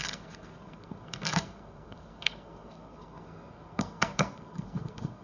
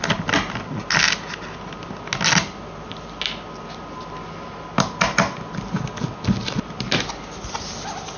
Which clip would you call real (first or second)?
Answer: second